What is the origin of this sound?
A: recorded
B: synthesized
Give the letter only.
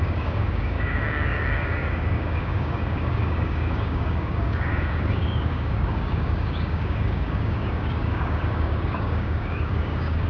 B